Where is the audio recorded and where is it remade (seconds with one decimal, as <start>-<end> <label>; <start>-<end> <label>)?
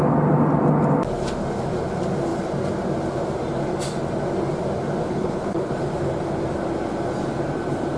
0.0-5.0 recorded; 5.0-5.7 remade; 5.7-8.0 recorded